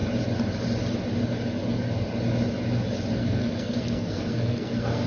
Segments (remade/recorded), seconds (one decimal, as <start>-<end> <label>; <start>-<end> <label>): 0.0-3.2 recorded; 3.2-5.1 remade